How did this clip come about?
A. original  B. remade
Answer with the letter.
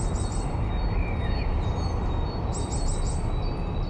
A